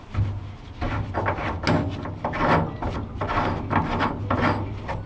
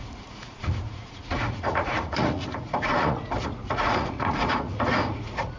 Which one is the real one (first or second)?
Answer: first